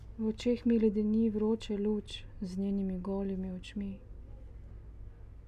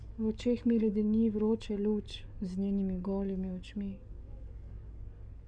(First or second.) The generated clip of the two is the second